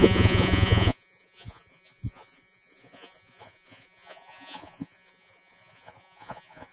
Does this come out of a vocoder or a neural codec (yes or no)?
yes